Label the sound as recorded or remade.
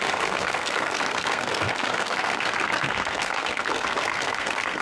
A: remade